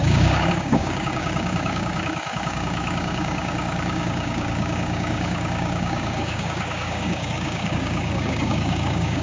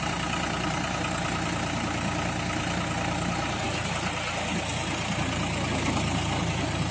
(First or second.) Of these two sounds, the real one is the second